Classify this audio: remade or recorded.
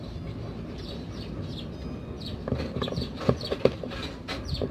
recorded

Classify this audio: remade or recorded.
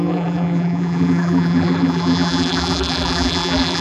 remade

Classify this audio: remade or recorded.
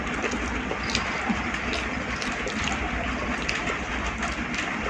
recorded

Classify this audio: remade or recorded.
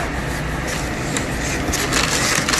recorded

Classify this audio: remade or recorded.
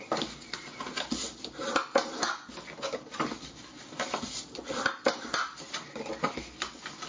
recorded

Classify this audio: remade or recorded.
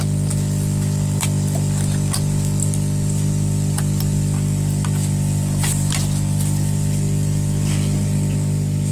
recorded